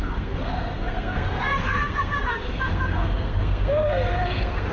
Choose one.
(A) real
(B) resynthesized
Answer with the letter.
B